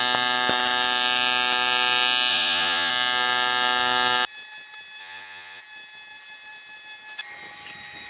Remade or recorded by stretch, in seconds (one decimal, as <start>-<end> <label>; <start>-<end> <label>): 0.0-2.3 recorded; 2.3-2.9 remade; 2.9-5.0 recorded; 5.0-5.6 remade; 5.6-8.1 recorded